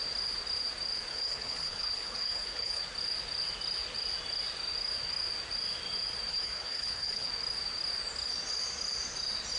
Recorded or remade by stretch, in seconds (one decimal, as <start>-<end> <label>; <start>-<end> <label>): 0.0-1.1 recorded; 1.1-2.8 remade; 2.8-6.3 recorded; 6.3-7.3 remade; 7.3-9.6 recorded